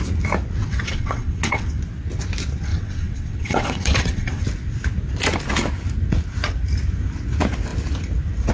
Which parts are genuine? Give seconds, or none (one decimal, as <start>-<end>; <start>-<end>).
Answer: 0.0-0.6; 1.8-2.7; 4.4-8.5